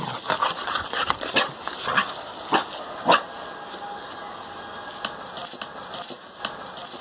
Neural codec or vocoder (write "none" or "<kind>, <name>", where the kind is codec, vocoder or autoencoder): none